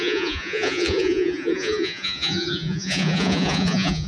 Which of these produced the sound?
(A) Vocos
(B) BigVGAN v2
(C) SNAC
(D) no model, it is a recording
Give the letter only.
A